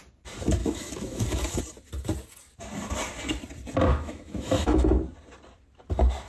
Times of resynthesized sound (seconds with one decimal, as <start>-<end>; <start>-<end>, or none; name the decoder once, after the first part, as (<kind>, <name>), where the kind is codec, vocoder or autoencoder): 0.6-1.6 (autoencoder, DAC-VAE); 3.9-5.0